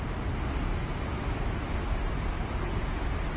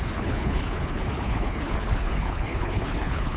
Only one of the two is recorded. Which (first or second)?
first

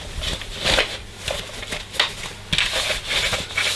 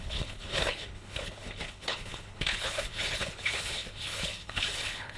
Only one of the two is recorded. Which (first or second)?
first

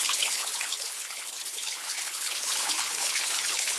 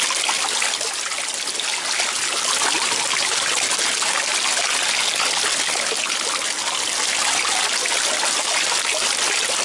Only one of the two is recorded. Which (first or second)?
second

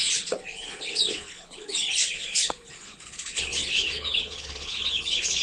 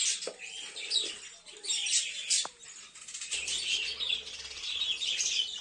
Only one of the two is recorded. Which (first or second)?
second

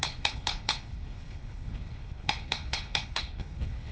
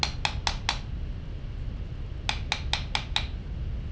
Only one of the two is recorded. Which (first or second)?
second